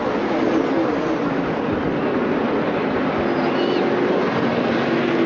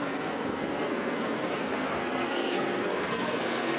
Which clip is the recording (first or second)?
first